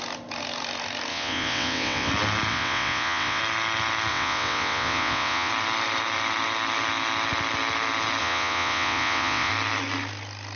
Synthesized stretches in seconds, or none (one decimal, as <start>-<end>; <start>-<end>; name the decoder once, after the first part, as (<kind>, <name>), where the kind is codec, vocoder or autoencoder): 1.1-2.1 (vocoder, WaveNeXt); 2.5-3.4; 4.1-5.5; 8.2-9.5

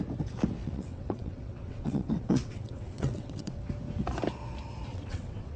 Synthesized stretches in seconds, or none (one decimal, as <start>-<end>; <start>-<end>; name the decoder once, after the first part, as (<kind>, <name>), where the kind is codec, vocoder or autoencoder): 0.6-3.6 (vocoder, WaveNeXt); 4.9-5.6

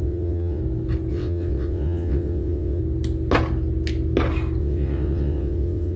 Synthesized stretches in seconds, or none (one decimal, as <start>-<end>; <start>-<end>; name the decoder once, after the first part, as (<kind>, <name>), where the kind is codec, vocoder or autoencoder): 0.0-0.6 (vocoder, WaveNeXt); 1.1-2.8; 4.6-6.0

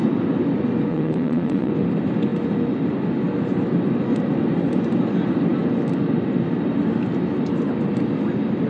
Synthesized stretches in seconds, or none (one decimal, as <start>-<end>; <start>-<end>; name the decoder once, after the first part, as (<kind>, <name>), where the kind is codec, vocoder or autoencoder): 0.9-1.7 (vocoder, WaveNeXt)